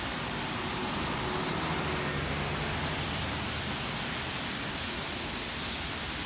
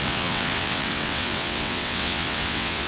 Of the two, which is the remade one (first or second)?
second